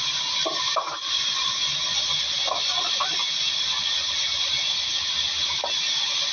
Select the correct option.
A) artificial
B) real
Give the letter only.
B